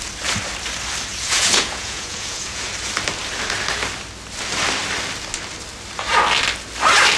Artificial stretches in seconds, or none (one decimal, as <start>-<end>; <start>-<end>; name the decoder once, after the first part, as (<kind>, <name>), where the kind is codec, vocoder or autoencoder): 1.1-2.7 (vocoder, Vocos)

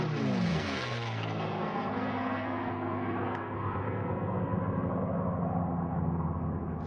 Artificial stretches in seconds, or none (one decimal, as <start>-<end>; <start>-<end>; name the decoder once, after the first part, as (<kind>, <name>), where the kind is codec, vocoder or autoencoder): 0.5-4.6 (codec, SNAC)

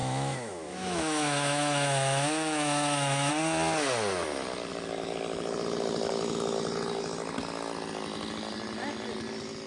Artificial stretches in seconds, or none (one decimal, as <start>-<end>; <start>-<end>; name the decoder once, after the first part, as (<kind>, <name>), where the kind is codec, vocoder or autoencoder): 0.0-3.3 (autoencoder, DAC-VAE)

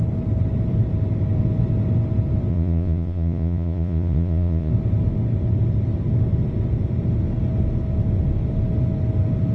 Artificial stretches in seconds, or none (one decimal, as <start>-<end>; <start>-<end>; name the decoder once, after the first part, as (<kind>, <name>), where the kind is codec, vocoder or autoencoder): 2.5-4.7 (vocoder, Vocos)